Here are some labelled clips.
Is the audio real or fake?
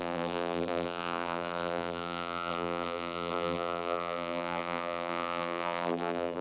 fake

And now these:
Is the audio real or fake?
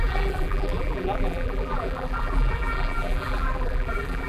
fake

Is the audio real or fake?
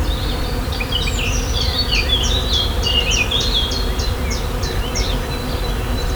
fake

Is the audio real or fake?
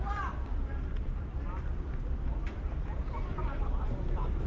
fake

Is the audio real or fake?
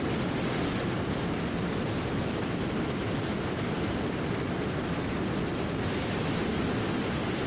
real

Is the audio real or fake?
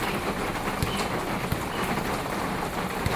real